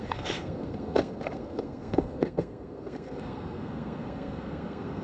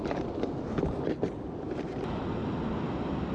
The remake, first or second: first